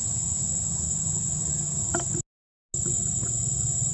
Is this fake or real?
real